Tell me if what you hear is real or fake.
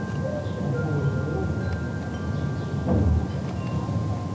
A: real